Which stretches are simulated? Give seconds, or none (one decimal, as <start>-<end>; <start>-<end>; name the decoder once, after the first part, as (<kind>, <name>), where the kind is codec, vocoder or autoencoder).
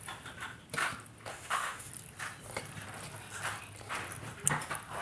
1.3-1.9 (autoencoder, DAC-VAE)